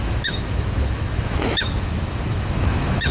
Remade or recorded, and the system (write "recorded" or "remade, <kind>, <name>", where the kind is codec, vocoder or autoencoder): remade, autoencoder, DAC-VAE